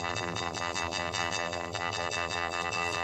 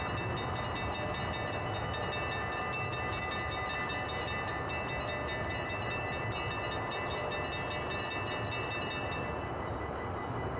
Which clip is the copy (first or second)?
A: first